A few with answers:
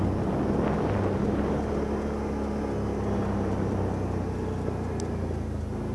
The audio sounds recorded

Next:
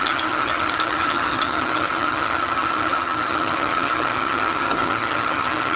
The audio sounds remade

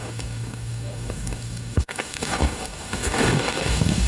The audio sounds remade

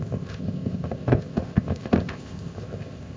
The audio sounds remade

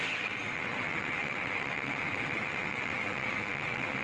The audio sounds remade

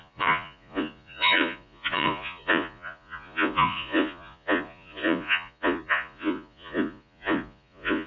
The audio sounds remade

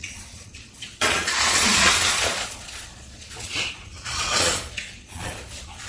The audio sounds remade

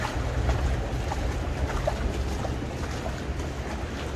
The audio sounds recorded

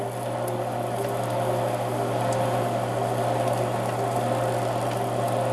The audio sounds recorded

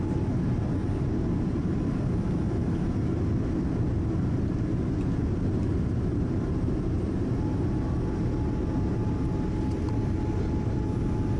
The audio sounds recorded